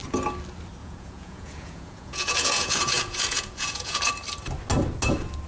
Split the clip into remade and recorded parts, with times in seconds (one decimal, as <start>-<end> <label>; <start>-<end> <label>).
0.0-0.8 recorded; 0.8-4.1 remade; 4.1-5.5 recorded